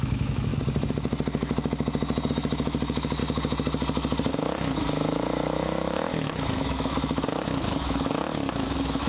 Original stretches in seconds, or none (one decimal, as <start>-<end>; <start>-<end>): 0.5-2.3; 3.2-4.3